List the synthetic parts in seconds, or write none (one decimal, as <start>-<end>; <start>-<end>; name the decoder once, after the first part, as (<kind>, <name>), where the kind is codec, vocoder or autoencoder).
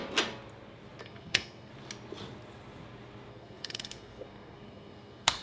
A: 1.0-1.7 (codec, SNAC); 3.3-5.4